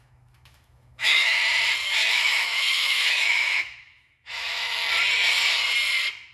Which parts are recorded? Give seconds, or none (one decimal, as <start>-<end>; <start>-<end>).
1.4-2.1; 4.8-6.3